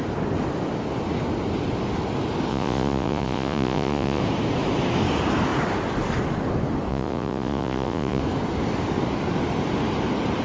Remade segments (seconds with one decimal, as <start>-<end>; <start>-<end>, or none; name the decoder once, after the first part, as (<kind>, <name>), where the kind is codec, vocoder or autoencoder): 2.5-4.2 (vocoder, Vocos); 6.9-8.2